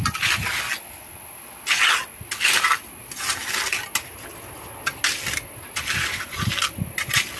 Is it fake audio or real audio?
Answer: real